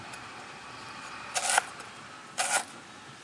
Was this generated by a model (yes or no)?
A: no